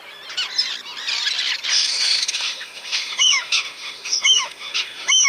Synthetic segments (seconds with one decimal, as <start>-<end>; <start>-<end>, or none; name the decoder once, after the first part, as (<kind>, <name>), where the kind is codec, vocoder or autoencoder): 1.7-5.3 (autoencoder, DAC-VAE)